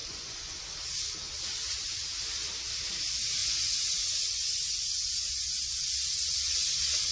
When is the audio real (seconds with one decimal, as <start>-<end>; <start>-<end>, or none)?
0.6-3.4; 5.1-7.1